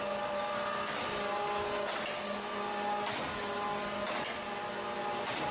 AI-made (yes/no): no